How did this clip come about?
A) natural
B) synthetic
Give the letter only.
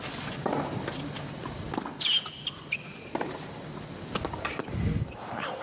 A